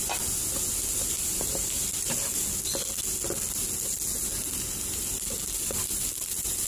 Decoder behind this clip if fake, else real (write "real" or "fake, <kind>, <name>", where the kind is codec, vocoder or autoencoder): real